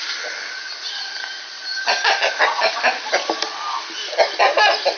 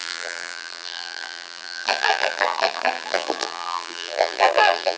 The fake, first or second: second